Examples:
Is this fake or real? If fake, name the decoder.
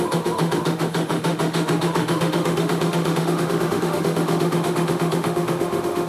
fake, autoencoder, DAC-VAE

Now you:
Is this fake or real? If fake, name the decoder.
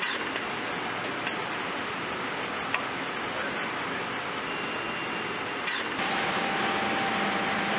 real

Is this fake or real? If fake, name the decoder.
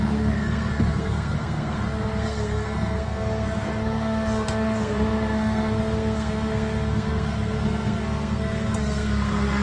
fake, codec, SNAC